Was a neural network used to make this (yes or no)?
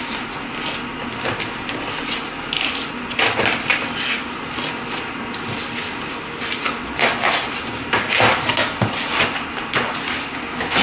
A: no